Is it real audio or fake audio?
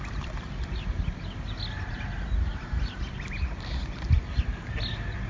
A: real